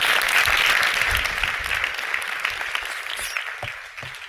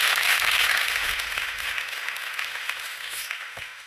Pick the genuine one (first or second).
first